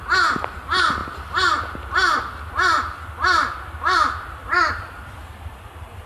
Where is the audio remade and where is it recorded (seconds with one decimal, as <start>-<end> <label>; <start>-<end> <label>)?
0.0-6.1 recorded